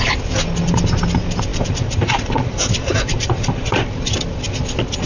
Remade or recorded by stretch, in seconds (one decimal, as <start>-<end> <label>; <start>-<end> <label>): 0.0-1.5 recorded; 1.5-4.2 remade; 4.2-5.1 recorded